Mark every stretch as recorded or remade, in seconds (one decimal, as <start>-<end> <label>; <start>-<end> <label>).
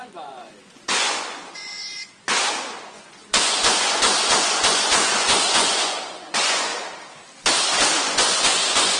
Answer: 0.0-6.7 remade; 6.7-7.9 recorded; 7.9-9.0 remade